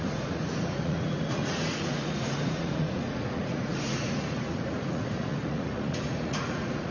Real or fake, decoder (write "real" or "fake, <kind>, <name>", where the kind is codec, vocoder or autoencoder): fake, vocoder, Vocos